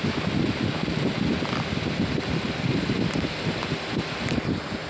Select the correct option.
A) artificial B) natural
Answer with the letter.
B